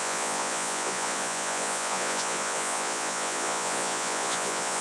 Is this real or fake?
fake